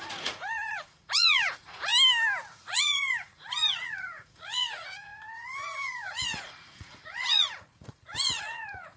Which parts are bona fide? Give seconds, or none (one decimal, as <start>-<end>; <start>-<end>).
1.9-2.5